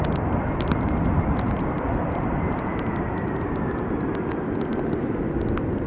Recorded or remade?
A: recorded